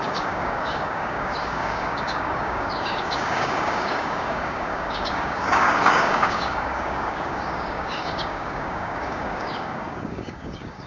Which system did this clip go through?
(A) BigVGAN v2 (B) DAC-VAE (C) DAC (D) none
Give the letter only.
C